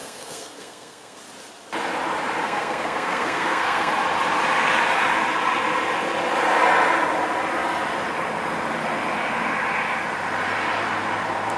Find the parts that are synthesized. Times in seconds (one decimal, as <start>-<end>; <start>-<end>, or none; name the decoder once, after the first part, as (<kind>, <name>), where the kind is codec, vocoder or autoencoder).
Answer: 0.0-1.2 (codec, SNAC); 2.4-3.9